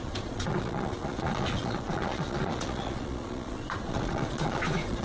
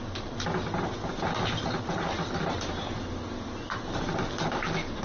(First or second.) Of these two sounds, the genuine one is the second